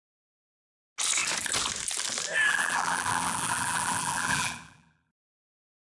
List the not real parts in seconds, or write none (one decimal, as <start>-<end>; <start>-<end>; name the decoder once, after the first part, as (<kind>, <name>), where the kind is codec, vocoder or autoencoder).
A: 2.5-5.8 (vocoder, BigVGAN v2)